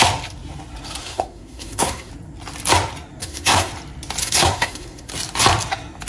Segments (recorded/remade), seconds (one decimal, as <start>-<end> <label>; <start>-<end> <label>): 0.0-1.0 recorded; 1.0-2.1 remade; 2.1-3.2 recorded; 3.2-3.7 remade; 3.7-4.2 recorded; 4.2-5.1 remade; 5.1-6.1 recorded